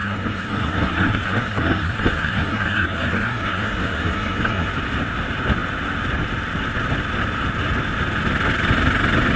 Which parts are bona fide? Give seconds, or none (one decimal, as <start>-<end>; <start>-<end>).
4.7-9.4